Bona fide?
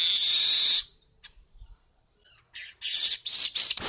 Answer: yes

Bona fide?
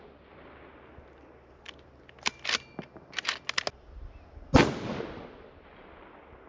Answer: yes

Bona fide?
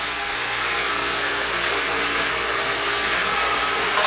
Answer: no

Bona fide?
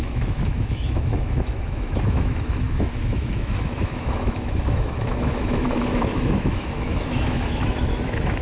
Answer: no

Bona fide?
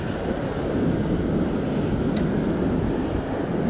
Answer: yes